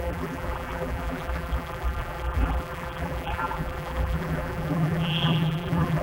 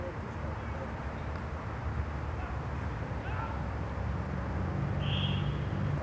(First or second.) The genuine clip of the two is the second